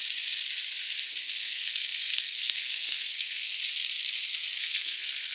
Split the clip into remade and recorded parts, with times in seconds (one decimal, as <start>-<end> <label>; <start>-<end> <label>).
0.0-1.2 recorded; 1.2-3.6 remade; 3.6-4.6 recorded; 4.6-5.3 remade